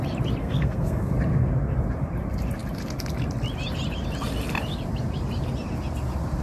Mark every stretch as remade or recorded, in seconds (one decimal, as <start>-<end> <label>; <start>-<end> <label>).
0.0-0.4 recorded; 0.4-1.1 remade; 1.1-6.4 recorded